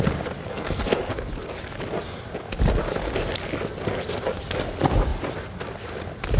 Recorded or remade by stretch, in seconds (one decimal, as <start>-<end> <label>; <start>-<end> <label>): 0.0-0.5 recorded; 0.5-1.3 remade; 1.3-6.4 recorded

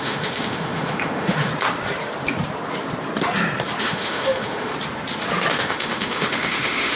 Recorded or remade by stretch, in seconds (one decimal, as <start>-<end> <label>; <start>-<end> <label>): 0.0-1.5 remade; 1.5-3.8 recorded; 3.8-4.7 remade; 4.7-5.5 recorded; 5.5-7.0 remade

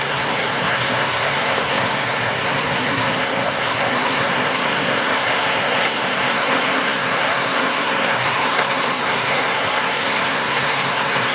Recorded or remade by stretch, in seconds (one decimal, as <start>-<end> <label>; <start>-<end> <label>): 0.0-11.3 remade

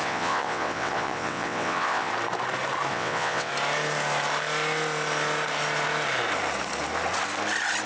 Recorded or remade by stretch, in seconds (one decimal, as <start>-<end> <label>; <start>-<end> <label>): 0.0-2.1 remade; 2.1-2.9 recorded; 2.9-3.5 remade; 3.5-7.9 recorded

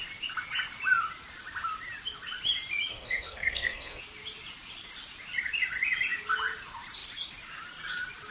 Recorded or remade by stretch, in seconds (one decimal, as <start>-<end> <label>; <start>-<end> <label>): 0.0-2.9 recorded; 2.9-4.0 remade; 4.0-8.3 recorded

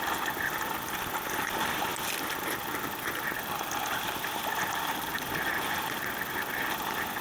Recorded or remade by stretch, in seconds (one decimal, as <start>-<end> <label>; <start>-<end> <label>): 0.0-7.2 recorded